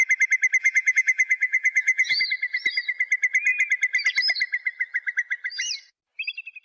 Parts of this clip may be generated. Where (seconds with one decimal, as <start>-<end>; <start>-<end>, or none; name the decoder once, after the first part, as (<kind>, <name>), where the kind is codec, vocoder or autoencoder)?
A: 0.6-2.2 (vocoder, BigVGAN v2)